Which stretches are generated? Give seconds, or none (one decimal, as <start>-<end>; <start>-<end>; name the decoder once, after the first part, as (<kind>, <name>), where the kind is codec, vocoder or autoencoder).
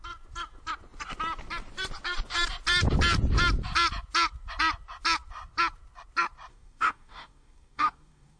6.5-8.4 (codec, DAC)